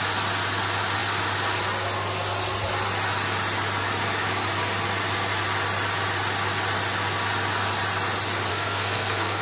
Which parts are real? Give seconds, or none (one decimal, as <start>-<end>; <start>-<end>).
0.0-8.5